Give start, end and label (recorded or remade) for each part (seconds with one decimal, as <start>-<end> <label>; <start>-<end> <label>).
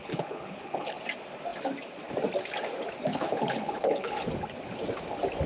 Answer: 0.0-1.0 remade; 1.0-3.1 recorded; 3.1-4.3 remade; 4.3-5.5 recorded